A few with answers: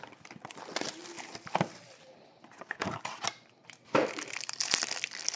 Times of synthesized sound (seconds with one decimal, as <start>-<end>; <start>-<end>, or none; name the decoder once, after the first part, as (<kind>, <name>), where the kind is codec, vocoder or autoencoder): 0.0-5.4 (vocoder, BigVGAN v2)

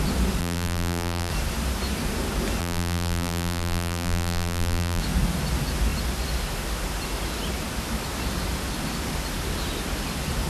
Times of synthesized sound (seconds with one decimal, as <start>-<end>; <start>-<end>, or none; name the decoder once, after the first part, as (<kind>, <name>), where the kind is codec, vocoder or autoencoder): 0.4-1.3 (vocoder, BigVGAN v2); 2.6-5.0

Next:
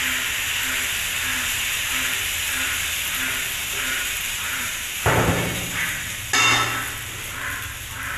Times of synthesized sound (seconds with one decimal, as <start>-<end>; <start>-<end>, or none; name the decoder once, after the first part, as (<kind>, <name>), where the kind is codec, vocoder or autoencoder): 1.3-1.9 (vocoder, BigVGAN v2); 3.6-6.1

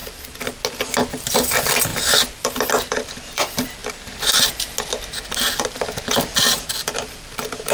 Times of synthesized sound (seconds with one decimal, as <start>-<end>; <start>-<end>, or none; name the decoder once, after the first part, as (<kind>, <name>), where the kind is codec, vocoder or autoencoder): 0.9-1.9 (vocoder, BigVGAN v2); 2.9-3.8; 6.0-7.7